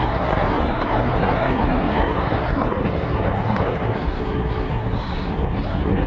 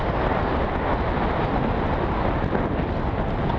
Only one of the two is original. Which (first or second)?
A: second